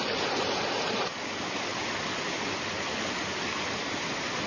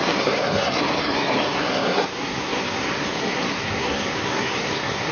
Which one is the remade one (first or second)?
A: second